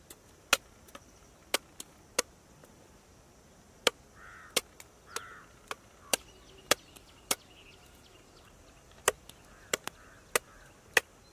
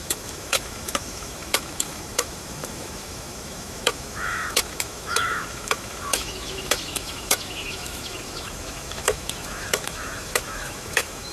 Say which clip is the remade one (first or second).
second